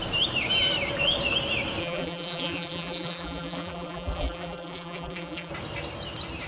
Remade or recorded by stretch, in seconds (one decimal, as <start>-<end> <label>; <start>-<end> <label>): 0.0-1.8 recorded; 1.8-5.5 remade; 5.5-6.5 recorded

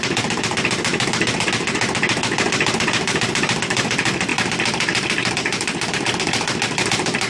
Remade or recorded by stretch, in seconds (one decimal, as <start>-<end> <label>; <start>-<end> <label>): 0.0-0.9 recorded; 0.9-1.5 remade; 1.5-7.3 recorded

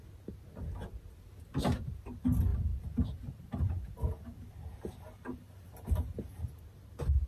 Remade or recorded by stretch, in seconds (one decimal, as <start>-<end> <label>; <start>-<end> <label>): 0.0-2.5 recorded; 2.5-4.8 remade; 4.8-5.3 recorded; 5.3-6.6 remade; 6.6-7.3 recorded

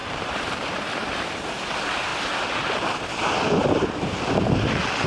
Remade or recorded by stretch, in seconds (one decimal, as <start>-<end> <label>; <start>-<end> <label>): 0.0-1.7 remade; 1.7-5.1 recorded